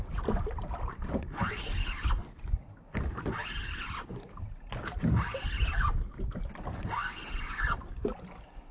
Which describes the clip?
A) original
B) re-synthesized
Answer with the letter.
A